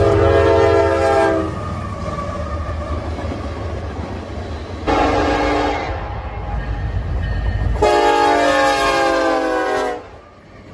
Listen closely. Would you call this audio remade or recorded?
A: recorded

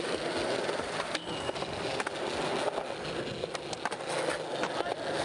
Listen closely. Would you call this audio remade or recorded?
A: recorded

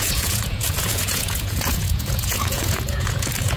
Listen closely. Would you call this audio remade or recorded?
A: remade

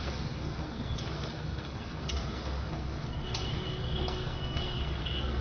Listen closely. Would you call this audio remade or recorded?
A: remade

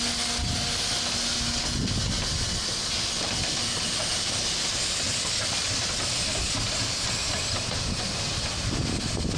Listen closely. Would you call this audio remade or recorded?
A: recorded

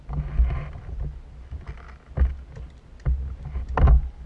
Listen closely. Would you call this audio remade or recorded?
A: recorded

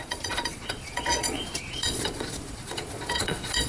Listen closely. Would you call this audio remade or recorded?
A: remade